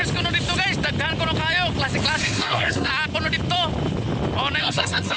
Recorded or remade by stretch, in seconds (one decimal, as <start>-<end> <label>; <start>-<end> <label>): 0.0-2.2 recorded; 2.2-2.9 remade; 2.9-4.6 recorded; 4.6-5.2 remade